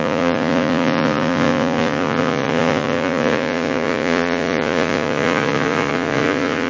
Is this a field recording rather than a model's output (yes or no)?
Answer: no